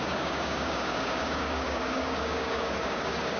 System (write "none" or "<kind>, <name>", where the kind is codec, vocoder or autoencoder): codec, DAC